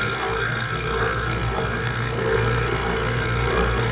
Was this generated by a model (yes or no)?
yes